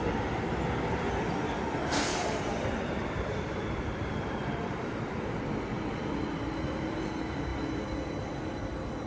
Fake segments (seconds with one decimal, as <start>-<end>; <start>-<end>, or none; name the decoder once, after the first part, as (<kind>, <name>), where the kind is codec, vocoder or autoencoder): 2.1-7.0 (vocoder, BigVGAN v2)